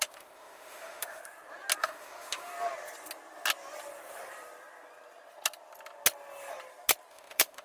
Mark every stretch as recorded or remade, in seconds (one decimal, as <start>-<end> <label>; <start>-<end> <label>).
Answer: 0.0-1.2 remade; 1.2-1.8 recorded; 1.8-2.5 remade; 2.5-7.1 recorded; 7.1-7.6 remade